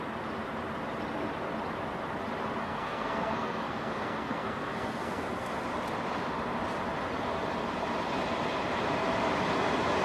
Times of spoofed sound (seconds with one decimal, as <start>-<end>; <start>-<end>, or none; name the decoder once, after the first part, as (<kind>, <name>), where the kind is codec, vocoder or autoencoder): 2.6-5.5 (codec, SNAC)